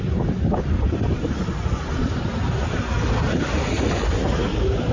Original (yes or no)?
yes